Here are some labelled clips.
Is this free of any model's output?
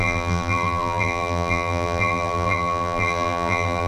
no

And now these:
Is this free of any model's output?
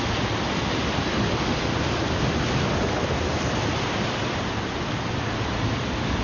yes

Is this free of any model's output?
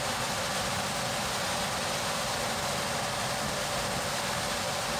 yes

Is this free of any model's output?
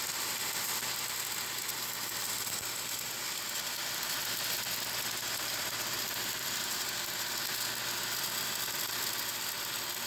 no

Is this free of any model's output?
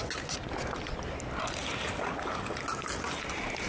yes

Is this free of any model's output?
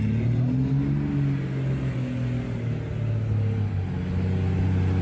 yes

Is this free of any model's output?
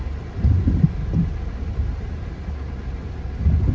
yes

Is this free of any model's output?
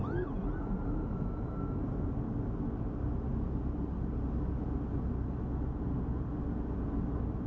yes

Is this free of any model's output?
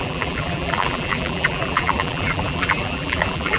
no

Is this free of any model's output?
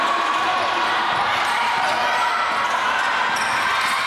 yes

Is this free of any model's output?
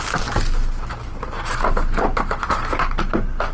yes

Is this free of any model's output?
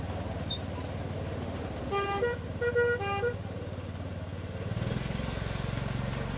yes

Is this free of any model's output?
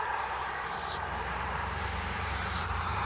no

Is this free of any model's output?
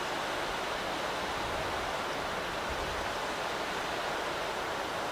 yes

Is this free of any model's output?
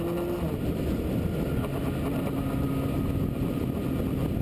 yes